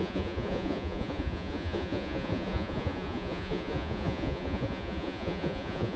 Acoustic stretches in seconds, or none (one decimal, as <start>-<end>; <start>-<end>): none